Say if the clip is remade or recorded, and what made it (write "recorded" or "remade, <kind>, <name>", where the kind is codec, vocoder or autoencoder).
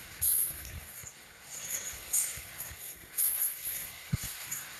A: remade, codec, SNAC